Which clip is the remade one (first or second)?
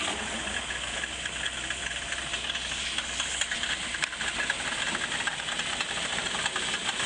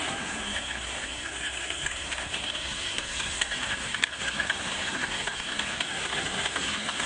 second